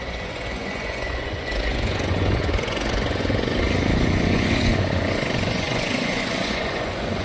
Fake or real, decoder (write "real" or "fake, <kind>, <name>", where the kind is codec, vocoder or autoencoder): fake, vocoder, Vocos